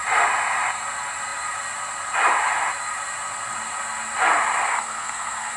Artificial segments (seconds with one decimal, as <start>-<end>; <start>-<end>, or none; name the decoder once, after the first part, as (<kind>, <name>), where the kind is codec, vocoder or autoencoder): 4.7-5.6 (codec, SNAC)